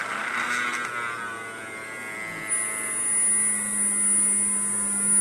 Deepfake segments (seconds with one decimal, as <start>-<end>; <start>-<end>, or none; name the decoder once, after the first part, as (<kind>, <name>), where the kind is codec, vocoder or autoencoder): none